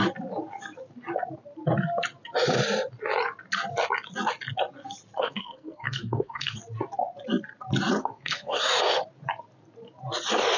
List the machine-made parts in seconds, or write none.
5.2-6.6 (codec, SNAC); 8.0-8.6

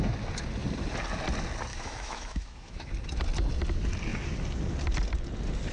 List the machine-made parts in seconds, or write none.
1.7-2.9 (autoencoder, DAC-VAE)

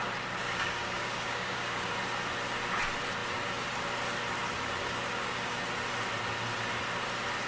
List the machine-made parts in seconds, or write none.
0.4-1.9 (codec, DAC); 4.8-5.6

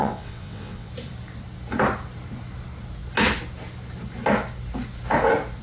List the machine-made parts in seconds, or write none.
0.0-0.9 (vocoder, WaveNeXt)

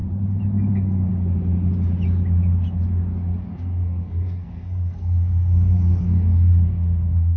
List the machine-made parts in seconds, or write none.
0.7-1.1 (codec, SNAC); 3.5-7.4

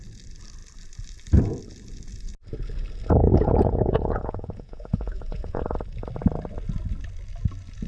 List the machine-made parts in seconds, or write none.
3.2-5.6 (vocoder, Vocos)

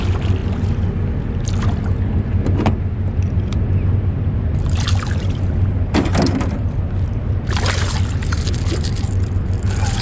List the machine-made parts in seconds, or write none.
0.0-0.4 (vocoder, BigVGAN v2); 2.0-10.0

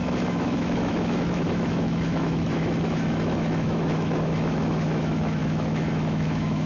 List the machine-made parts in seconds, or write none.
0.0-6.7 (autoencoder, DAC-VAE)